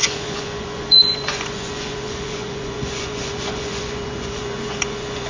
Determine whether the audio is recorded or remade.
remade